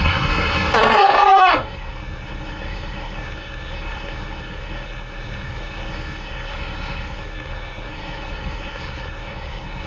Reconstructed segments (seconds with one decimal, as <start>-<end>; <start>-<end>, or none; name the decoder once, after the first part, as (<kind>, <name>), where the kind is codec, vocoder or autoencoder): 0.0-9.9 (codec, SNAC)